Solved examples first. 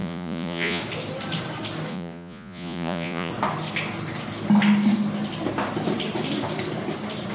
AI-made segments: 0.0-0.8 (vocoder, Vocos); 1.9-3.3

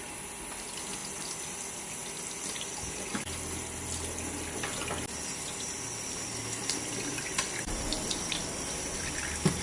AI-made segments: 7.1-8.3 (vocoder, BigVGAN v2)

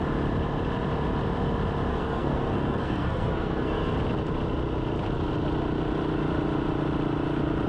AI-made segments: 1.9-3.9 (codec, SNAC)

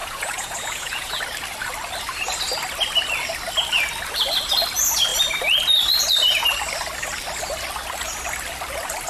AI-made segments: 0.0-1.2 (vocoder, Vocos)

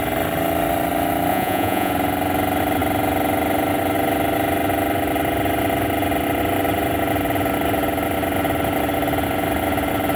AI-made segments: 1.3-1.9 (vocoder, Vocos)